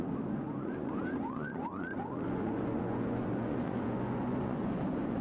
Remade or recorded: remade